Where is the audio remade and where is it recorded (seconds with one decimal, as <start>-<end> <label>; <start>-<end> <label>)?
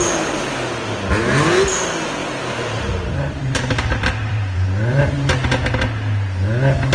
0.0-2.2 recorded; 2.2-5.0 remade; 5.0-6.9 recorded